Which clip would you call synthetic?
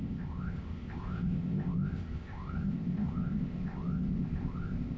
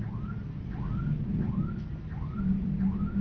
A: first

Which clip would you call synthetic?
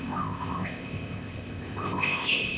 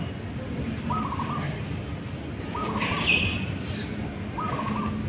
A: first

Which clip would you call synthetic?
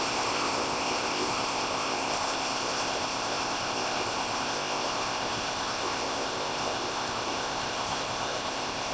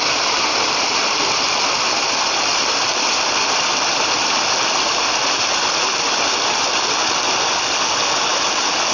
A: first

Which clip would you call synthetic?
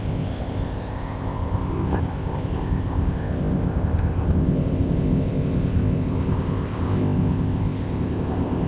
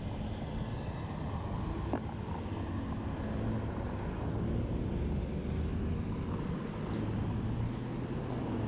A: first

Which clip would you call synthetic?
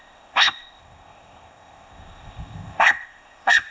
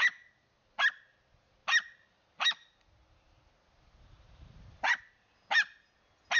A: first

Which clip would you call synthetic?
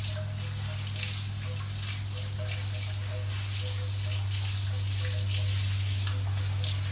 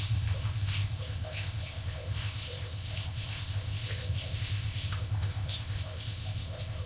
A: second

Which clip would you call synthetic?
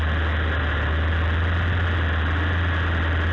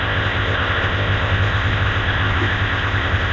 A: second